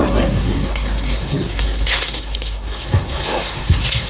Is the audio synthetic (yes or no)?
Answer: yes